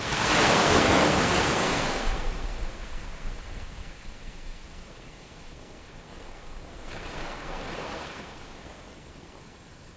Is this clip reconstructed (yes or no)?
yes